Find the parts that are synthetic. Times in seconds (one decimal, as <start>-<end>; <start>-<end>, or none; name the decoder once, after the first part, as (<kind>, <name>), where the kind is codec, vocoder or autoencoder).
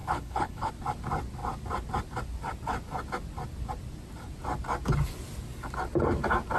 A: 0.0-0.7 (codec, HILCodec)